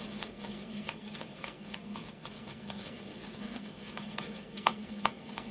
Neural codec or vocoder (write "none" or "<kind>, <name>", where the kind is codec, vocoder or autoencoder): codec, SNAC